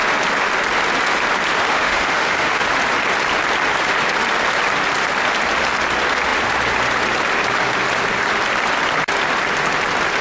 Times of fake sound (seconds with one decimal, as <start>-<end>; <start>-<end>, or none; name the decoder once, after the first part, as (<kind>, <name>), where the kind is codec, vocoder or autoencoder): 1.6-2.7 (autoencoder, DAC-VAE)